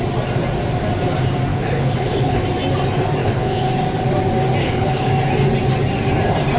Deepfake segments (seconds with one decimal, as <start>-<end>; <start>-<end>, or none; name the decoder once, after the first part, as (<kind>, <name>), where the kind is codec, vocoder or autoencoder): 1.5-2.4 (codec, HILCodec); 3.2-3.7; 4.6-5.1